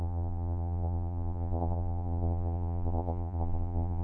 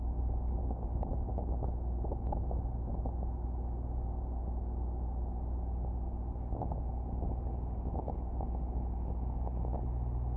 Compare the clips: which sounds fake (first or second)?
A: first